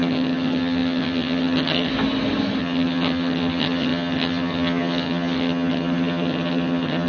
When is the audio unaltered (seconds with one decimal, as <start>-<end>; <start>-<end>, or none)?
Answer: 1.9-2.6